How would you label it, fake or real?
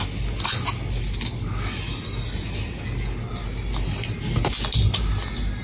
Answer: real